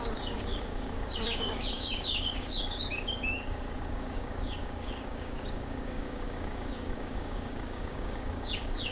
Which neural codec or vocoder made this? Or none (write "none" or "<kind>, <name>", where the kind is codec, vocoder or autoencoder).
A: codec, DAC